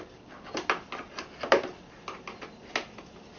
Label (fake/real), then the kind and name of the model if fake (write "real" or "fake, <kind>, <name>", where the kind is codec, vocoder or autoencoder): real